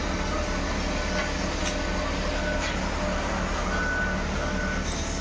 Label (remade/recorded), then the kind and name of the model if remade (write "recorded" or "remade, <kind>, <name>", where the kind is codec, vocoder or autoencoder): recorded